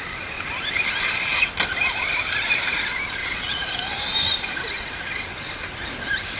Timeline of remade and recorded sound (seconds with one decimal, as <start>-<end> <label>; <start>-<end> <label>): 0.0-3.2 recorded; 3.2-3.7 remade; 3.7-6.4 recorded